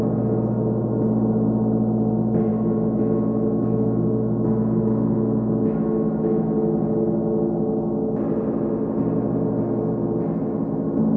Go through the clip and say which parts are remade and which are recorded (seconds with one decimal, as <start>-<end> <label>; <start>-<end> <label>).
0.0-2.5 recorded; 2.5-6.4 remade; 6.4-11.2 recorded